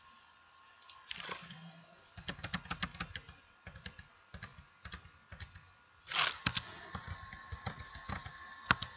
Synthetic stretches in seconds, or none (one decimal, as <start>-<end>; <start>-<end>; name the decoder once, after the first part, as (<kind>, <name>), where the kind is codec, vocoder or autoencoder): none